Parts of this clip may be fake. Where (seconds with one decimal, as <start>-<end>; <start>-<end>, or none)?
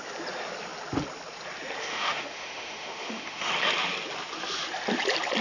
1.8-3.5